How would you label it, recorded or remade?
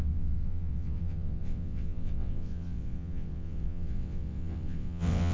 remade